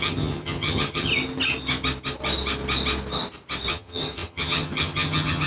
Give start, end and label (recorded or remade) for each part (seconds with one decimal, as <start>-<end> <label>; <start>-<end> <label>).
0.0-1.1 remade; 1.1-3.7 recorded; 3.7-5.5 remade